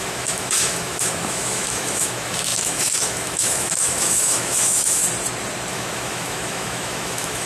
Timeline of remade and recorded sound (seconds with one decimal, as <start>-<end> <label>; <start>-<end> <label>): 0.0-5.0 remade; 5.0-5.7 recorded; 5.7-7.5 remade